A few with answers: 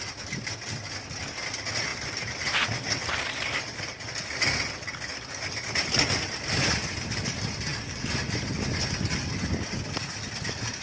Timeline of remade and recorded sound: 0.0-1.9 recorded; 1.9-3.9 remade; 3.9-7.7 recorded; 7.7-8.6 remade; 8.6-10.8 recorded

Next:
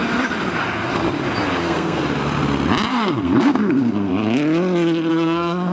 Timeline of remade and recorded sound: 0.0-1.6 recorded; 1.6-2.0 remade; 2.0-2.9 recorded; 2.9-4.1 remade; 4.1-5.1 recorded; 5.1-5.7 remade

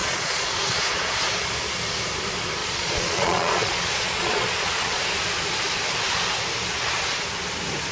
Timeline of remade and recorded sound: 0.0-1.2 remade; 1.2-2.6 recorded; 2.6-5.0 remade; 5.0-7.9 recorded

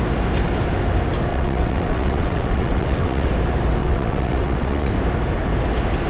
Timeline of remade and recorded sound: 0.0-1.3 recorded; 1.3-3.3 remade; 3.3-3.8 recorded; 3.8-4.9 remade; 4.9-6.1 recorded

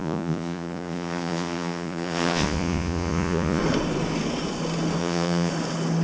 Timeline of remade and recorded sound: 0.0-3.6 remade; 3.6-5.0 recorded; 5.0-5.5 remade; 5.5-6.0 recorded